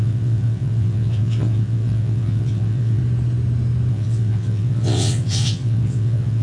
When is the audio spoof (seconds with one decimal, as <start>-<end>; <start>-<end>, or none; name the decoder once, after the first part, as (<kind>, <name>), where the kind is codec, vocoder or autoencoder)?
0.0-3.0 (vocoder, WaveNeXt); 3.9-6.4